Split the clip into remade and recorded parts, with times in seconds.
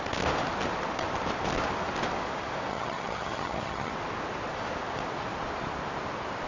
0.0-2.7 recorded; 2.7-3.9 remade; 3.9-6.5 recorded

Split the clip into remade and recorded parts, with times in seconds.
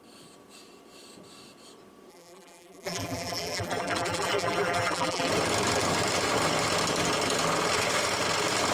0.0-2.1 recorded; 2.1-5.3 remade; 5.3-8.7 recorded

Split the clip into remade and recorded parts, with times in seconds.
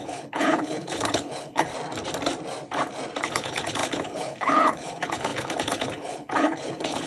0.0-1.7 remade; 1.7-3.2 recorded; 3.2-7.1 remade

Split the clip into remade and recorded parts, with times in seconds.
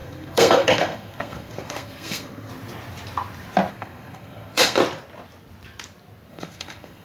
0.0-2.5 remade; 2.5-3.7 recorded; 3.7-4.8 remade; 4.8-6.3 recorded; 6.3-7.0 remade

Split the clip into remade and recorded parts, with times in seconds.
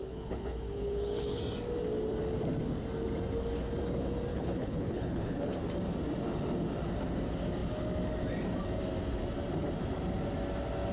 0.0-1.4 remade; 1.4-4.3 recorded; 4.3-5.5 remade; 5.5-10.9 recorded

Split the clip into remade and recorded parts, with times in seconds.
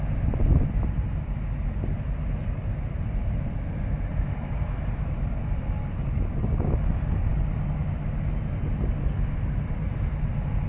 0.0-10.7 recorded